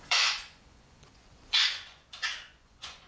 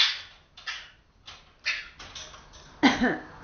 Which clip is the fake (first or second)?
first